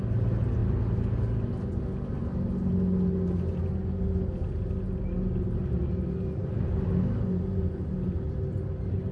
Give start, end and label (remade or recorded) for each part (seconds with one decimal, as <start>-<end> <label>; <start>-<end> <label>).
0.0-9.1 recorded